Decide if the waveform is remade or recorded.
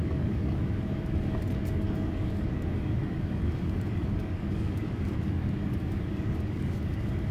remade